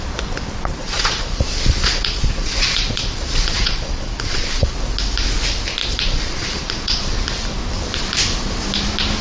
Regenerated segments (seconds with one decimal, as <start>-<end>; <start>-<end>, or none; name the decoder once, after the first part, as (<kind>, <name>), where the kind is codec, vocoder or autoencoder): 0.7-4.7 (vocoder, Vocos); 5.8-7.2

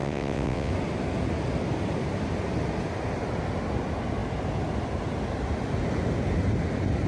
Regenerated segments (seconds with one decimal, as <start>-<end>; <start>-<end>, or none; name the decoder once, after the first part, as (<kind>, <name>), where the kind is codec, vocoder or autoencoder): 0.0-0.7 (vocoder, WaveNeXt)

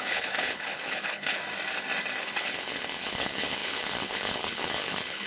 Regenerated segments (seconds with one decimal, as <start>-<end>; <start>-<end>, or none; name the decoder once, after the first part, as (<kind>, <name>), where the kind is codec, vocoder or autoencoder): 0.0-1.4 (codec, HILCodec); 2.2-5.3

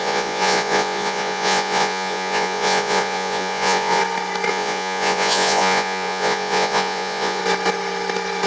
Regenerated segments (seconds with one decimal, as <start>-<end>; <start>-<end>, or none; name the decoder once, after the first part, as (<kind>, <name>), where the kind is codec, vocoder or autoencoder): 0.0-4.0 (vocoder, Vocos); 4.5-7.4

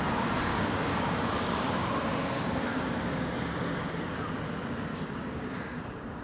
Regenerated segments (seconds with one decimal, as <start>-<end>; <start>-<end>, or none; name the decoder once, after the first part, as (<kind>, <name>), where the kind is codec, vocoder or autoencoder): 0.5-4.0 (codec, DAC); 4.9-6.2

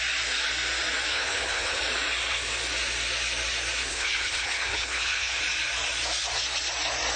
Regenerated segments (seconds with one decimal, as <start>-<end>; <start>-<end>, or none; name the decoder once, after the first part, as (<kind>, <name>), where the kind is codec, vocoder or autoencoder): 1.1-1.8 (codec, HILCodec); 3.9-5.4

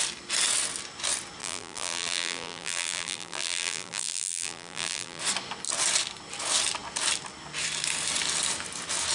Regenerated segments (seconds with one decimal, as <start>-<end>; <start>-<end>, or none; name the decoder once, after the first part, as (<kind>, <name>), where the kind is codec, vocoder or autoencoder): 1.4-5.2 (vocoder, BigVGAN v2)

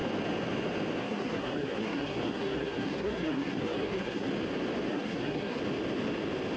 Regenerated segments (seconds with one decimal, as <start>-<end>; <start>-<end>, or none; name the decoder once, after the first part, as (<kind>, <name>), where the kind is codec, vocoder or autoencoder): 1.0-4.3 (codec, SNAC); 4.9-5.6